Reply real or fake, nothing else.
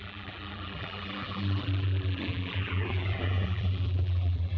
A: fake